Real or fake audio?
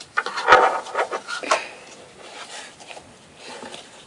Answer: real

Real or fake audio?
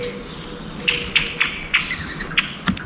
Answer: real